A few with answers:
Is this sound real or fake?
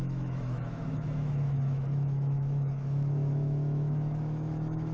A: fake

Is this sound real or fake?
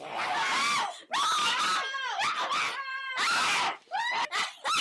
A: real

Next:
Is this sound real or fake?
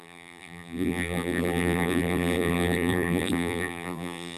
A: fake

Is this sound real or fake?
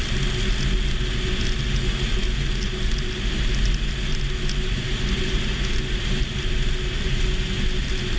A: real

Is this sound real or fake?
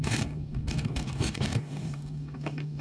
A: fake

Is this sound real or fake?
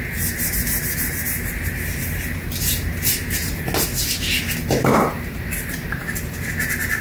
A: real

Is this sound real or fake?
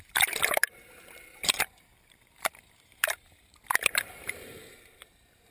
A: fake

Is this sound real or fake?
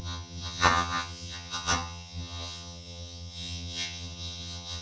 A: fake